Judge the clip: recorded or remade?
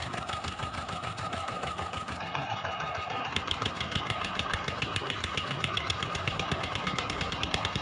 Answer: remade